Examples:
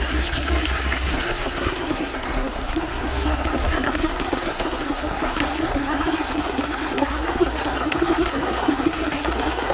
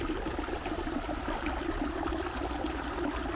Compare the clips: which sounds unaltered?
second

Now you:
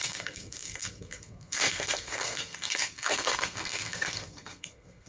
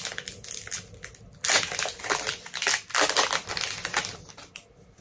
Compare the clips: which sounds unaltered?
second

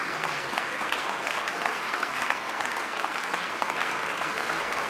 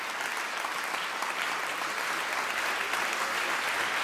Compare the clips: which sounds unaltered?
second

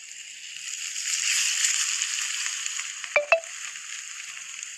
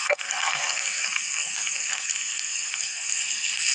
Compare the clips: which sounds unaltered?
first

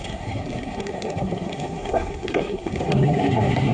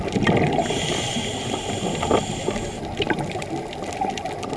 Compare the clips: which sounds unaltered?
second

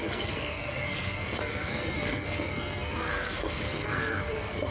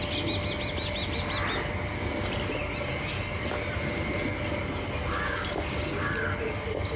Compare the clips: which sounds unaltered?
second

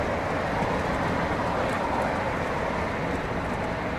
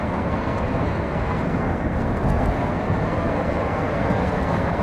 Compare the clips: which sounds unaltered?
first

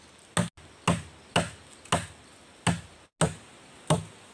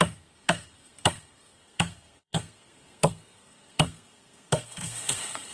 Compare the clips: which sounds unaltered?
first